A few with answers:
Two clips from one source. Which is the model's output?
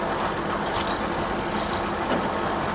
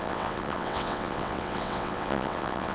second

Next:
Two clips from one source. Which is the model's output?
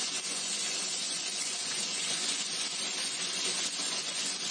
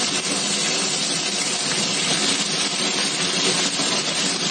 first